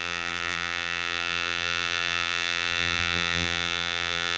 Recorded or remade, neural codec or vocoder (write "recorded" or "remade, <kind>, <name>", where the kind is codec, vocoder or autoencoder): remade, vocoder, BigVGAN v2